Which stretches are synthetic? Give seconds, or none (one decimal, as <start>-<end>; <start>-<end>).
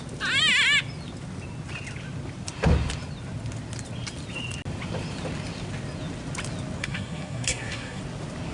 6.8-8.0